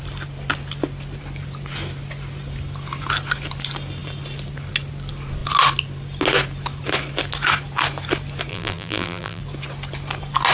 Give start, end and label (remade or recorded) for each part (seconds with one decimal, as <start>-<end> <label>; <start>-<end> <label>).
0.0-8.5 recorded; 8.5-9.4 remade; 9.4-10.5 recorded